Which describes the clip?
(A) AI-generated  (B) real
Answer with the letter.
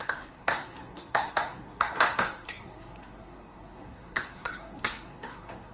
A